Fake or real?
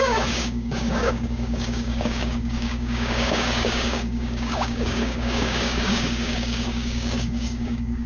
fake